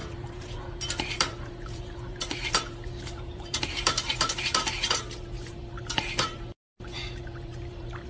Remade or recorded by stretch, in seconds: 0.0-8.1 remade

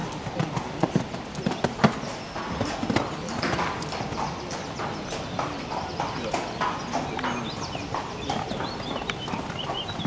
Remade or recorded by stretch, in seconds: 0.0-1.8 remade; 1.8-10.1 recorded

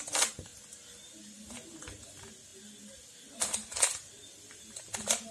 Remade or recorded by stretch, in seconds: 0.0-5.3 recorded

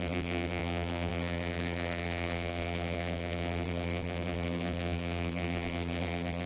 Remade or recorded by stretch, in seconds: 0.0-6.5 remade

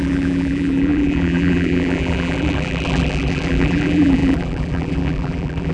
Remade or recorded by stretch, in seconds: 0.0-5.7 remade